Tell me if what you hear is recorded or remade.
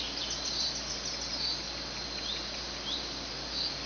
recorded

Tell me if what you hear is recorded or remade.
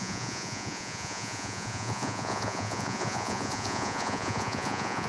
remade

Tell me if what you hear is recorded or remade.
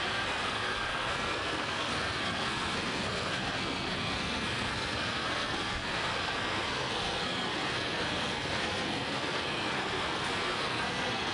remade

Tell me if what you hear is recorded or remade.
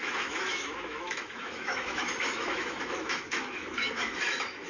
remade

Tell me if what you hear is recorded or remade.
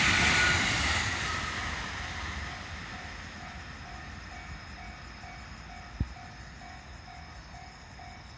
recorded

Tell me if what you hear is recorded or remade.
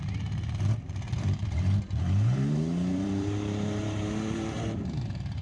remade